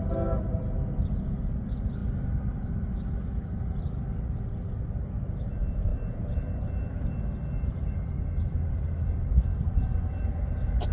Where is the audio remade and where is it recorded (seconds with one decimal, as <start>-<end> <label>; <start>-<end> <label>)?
0.0-10.9 recorded